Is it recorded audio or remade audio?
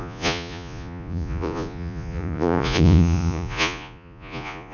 remade